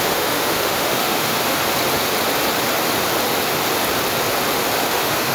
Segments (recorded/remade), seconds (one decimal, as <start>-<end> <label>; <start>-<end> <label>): 0.0-1.6 remade; 1.6-4.8 recorded; 4.8-5.3 remade